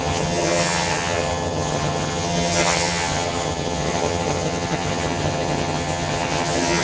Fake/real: fake